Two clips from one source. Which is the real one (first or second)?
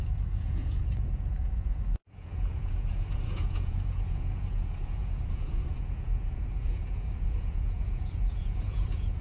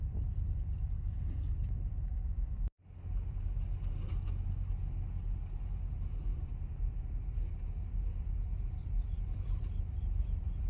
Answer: second